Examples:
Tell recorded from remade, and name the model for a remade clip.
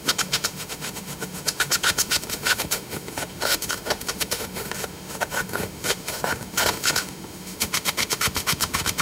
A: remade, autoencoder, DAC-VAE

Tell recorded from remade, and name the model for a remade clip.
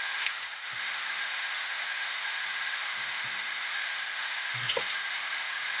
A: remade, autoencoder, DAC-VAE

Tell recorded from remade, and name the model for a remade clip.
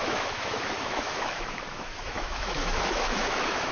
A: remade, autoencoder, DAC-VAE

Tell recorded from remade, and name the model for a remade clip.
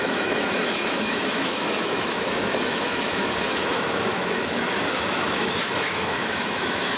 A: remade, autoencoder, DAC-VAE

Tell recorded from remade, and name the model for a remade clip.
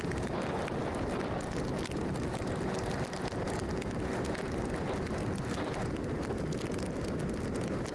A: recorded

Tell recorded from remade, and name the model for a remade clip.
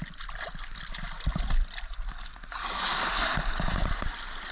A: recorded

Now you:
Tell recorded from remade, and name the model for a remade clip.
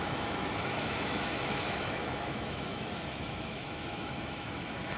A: remade, autoencoder, DAC-VAE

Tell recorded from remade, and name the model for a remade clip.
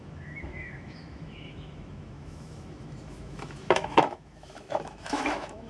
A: remade, autoencoder, DAC-VAE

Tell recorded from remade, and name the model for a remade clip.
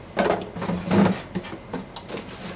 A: recorded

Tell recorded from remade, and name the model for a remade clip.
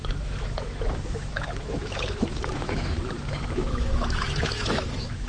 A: remade, autoencoder, DAC-VAE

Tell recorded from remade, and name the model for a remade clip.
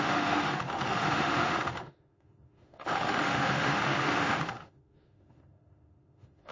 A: remade, autoencoder, DAC-VAE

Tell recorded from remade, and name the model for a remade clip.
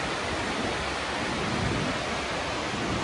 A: recorded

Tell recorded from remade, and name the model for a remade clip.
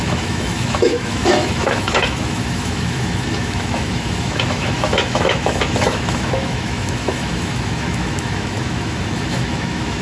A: remade, autoencoder, DAC-VAE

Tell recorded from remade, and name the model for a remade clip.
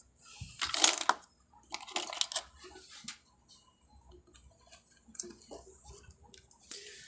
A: recorded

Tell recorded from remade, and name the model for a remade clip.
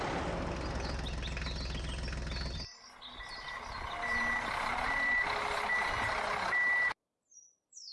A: recorded